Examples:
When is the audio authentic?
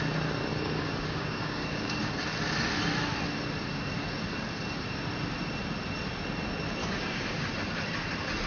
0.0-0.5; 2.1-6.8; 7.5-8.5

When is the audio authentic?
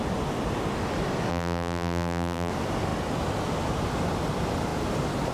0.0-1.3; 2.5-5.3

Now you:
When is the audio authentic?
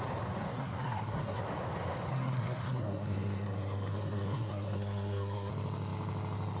0.0-0.5; 1.4-2.1; 5.5-6.6